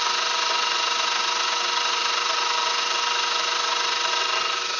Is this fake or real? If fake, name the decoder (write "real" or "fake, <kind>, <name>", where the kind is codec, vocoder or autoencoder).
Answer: real